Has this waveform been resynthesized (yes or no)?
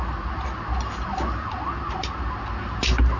no